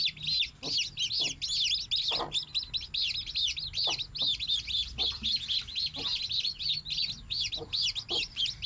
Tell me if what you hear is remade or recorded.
recorded